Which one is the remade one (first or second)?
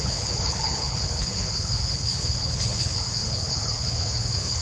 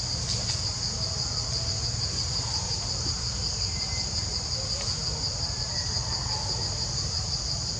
first